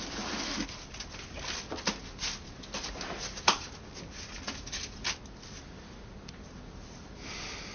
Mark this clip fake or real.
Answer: real